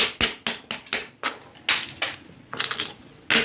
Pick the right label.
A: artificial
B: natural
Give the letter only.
B